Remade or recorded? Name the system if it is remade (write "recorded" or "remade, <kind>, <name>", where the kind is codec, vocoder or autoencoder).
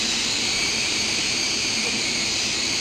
remade, vocoder, BigVGAN v2